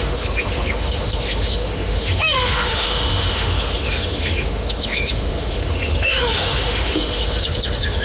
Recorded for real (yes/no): no